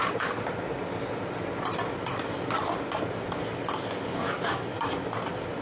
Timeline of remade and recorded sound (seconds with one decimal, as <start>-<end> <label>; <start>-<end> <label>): 0.0-2.0 recorded; 2.0-2.6 remade; 2.6-3.4 recorded; 3.4-5.0 remade; 5.0-5.6 recorded